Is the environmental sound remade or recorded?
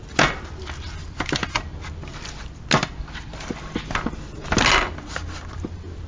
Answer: recorded